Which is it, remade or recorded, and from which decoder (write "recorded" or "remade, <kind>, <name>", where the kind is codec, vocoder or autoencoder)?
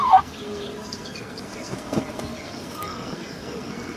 remade, codec, SNAC